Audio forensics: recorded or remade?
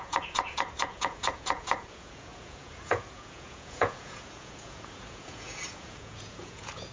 remade